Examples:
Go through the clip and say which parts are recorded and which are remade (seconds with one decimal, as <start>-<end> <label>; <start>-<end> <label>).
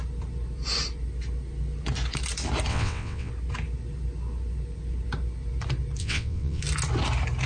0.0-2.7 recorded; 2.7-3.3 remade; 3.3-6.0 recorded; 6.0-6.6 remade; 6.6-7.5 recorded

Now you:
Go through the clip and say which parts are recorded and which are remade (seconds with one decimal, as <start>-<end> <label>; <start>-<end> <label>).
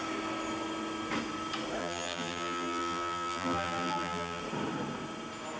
0.0-1.8 recorded; 1.8-4.4 remade; 4.4-5.6 recorded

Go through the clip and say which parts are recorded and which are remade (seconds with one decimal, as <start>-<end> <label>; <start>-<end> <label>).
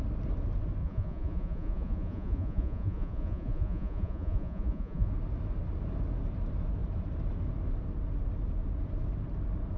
0.0-0.8 recorded; 0.8-5.1 remade; 5.1-9.8 recorded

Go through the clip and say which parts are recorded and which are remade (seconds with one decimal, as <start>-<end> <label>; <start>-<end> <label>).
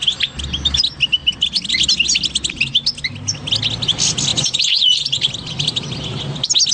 0.0-4.3 recorded; 4.3-5.2 remade; 5.2-6.7 recorded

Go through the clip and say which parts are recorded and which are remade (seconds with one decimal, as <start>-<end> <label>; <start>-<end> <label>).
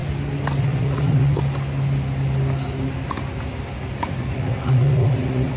0.0-0.6 recorded; 0.6-1.4 remade; 1.4-4.0 recorded; 4.0-5.6 remade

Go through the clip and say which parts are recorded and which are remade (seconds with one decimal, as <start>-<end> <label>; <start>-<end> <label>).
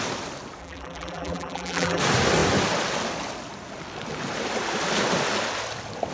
0.0-0.6 recorded; 0.6-2.0 remade; 2.0-6.1 recorded